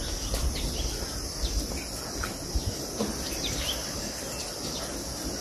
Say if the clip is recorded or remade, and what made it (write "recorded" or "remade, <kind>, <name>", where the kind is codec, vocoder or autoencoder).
recorded